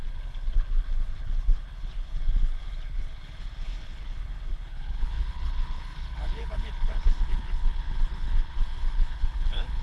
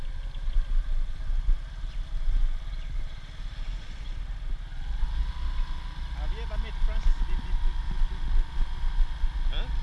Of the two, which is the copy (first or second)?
first